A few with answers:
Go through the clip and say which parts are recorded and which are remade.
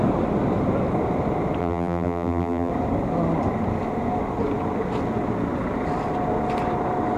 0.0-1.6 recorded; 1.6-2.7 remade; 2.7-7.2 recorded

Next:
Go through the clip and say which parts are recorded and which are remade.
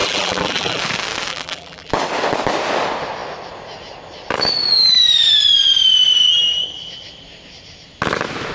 0.0-0.8 remade; 0.8-1.3 recorded; 1.3-1.9 remade; 1.9-8.5 recorded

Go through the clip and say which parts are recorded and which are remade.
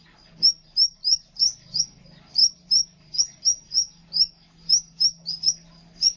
0.0-1.0 recorded; 1.0-1.8 remade; 1.8-6.2 recorded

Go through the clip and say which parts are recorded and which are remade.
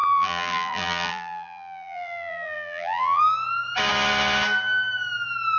0.0-3.2 remade; 3.2-5.6 recorded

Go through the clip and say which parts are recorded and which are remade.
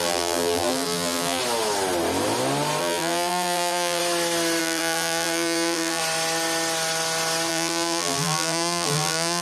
0.0-1.4 remade; 1.4-2.8 recorded; 2.8-4.0 remade; 4.0-4.6 recorded; 4.6-6.0 remade; 6.0-7.5 recorded; 7.5-9.4 remade